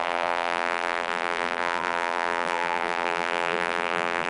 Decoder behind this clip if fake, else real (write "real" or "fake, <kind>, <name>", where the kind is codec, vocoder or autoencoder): fake, vocoder, BigVGAN v2